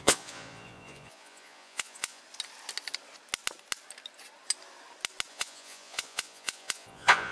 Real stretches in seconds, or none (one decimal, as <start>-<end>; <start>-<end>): 2.2-5.3